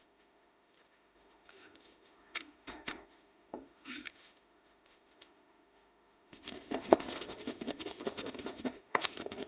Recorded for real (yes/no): no